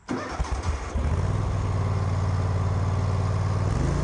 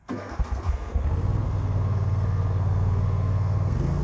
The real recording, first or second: first